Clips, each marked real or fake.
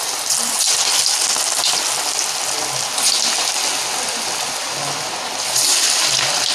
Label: real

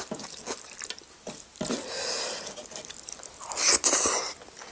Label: real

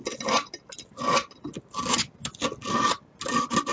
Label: real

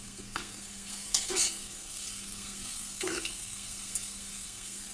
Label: fake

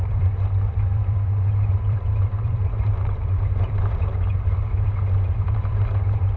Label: fake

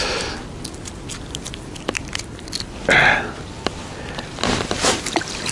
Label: real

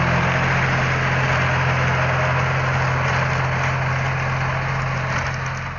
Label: real